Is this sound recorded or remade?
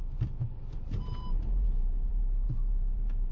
remade